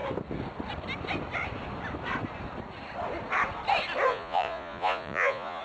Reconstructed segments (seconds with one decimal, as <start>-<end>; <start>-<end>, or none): 4.1-5.6